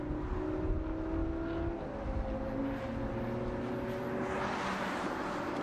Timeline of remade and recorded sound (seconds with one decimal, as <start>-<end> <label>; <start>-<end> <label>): 0.0-5.6 recorded

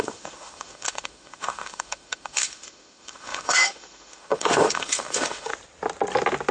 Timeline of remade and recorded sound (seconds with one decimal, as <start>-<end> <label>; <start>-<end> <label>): 0.0-5.5 remade; 5.5-6.5 recorded

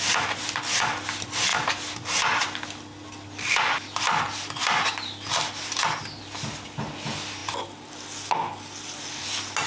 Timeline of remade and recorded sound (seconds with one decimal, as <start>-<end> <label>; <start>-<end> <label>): 0.0-9.7 recorded

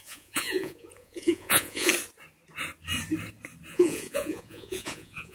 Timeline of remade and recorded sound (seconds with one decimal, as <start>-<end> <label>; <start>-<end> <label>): 0.0-1.9 remade; 1.9-3.7 recorded; 3.7-5.3 remade

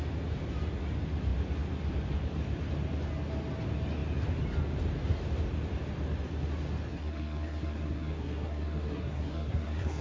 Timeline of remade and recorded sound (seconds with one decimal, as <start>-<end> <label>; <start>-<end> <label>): 0.0-6.9 recorded; 6.9-10.0 remade

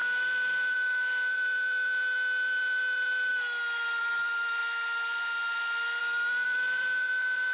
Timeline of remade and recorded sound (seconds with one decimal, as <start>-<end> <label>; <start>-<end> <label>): 0.0-3.3 remade; 3.3-4.0 recorded; 4.0-7.5 remade

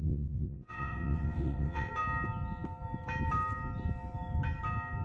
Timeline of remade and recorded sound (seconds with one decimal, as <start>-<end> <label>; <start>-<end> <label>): 0.0-1.9 remade; 1.9-5.0 recorded